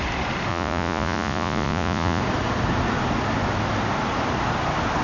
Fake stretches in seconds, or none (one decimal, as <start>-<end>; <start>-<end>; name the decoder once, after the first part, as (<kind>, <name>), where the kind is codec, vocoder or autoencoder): 0.5-2.2 (vocoder, Vocos)